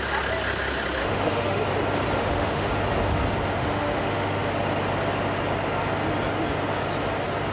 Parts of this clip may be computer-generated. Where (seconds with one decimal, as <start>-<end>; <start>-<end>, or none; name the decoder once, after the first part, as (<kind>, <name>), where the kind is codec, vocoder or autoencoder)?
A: 1.0-1.6 (autoencoder, DAC-VAE); 2.2-2.7; 3.5-4.4